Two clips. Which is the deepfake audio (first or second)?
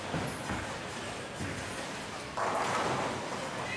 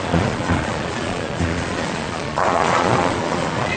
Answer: second